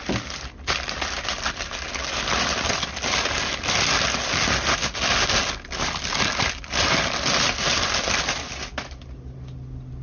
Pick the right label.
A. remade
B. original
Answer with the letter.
B